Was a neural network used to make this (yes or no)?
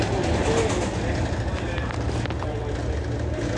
no